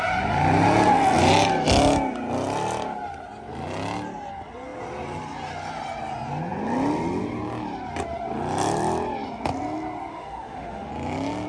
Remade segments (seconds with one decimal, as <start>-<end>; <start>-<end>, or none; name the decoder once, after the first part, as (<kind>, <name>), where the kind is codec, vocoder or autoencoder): 10.1-10.9 (autoencoder, DAC-VAE)